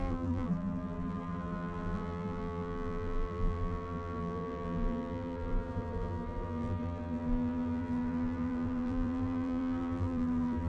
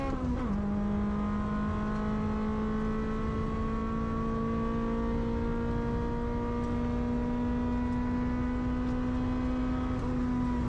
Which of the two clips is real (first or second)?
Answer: second